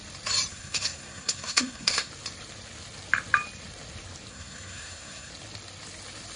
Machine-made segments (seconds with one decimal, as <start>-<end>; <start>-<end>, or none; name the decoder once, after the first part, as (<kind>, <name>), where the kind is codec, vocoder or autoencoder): 0.5-2.1 (codec, SNAC); 4.3-5.3